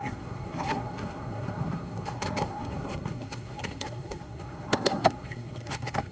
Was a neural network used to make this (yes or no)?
yes